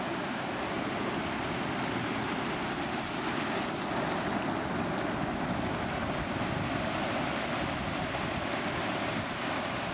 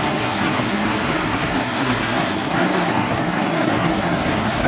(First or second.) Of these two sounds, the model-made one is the second